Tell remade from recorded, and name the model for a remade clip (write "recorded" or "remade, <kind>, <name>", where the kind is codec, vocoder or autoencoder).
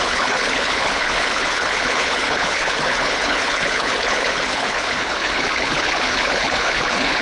remade, codec, HILCodec